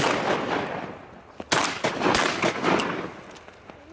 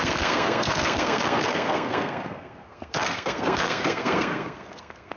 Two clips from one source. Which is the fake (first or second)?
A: second